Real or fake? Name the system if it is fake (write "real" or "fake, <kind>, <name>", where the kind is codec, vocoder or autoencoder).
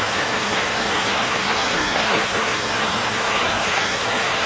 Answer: fake, codec, SNAC